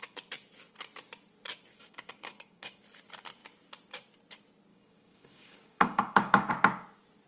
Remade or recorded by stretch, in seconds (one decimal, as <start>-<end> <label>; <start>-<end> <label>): 0.0-1.7 recorded; 1.7-2.8 remade; 2.8-4.7 recorded; 4.7-6.5 remade; 6.5-7.3 recorded